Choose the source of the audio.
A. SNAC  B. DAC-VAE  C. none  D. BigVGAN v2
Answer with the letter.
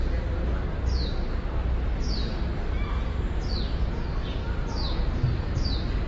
C